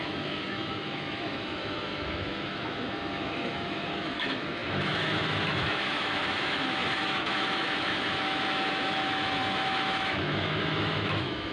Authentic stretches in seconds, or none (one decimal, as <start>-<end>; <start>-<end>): none